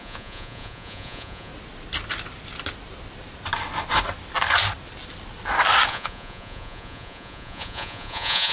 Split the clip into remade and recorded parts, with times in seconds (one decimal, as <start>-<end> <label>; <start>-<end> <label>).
0.0-1.5 remade; 1.5-5.9 recorded; 5.9-8.5 remade